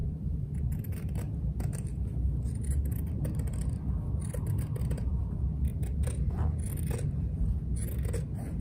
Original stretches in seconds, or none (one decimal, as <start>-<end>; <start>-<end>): 5.1-5.7; 6.3-8.6